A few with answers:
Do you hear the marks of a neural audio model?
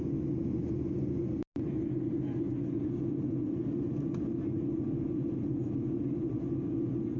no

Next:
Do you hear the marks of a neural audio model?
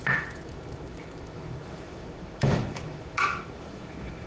yes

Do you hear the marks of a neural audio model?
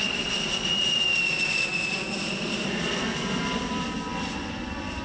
no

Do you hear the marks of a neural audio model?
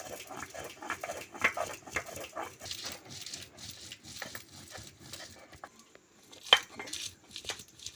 no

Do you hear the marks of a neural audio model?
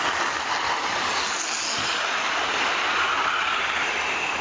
no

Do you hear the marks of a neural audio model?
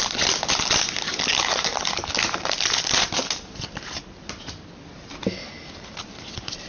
no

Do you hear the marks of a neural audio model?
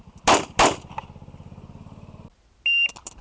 no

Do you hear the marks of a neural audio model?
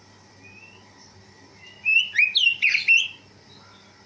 no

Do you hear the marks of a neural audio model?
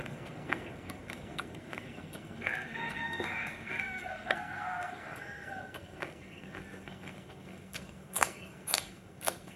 yes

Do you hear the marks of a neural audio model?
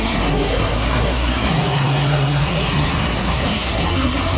yes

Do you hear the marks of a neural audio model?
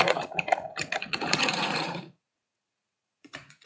yes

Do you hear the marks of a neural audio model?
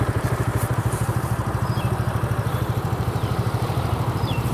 yes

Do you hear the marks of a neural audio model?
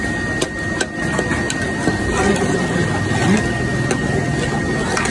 no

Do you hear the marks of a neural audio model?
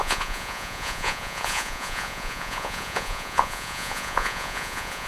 yes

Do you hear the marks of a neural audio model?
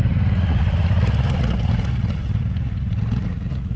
yes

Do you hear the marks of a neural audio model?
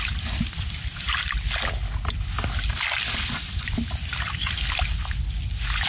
no